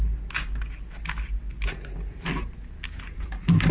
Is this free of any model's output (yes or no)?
yes